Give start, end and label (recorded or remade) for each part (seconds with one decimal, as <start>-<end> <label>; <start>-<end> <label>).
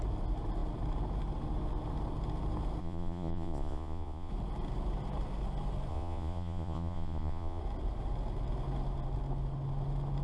0.0-2.8 recorded; 2.8-4.3 remade; 4.3-5.9 recorded; 5.9-7.6 remade; 7.6-10.2 recorded